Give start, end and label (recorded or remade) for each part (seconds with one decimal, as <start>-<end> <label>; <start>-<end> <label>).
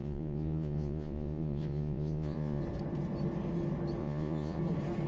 0.0-2.6 remade; 2.6-4.0 recorded; 4.0-4.6 remade; 4.6-5.1 recorded